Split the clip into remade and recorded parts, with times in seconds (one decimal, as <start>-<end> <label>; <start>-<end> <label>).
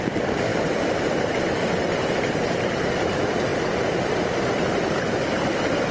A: 0.0-5.9 recorded